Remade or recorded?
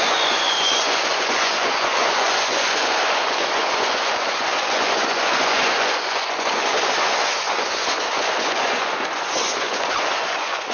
remade